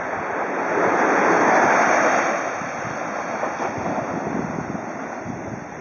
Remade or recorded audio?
recorded